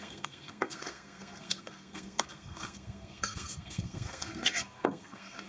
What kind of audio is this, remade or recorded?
remade